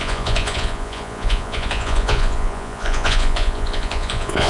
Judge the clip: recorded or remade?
remade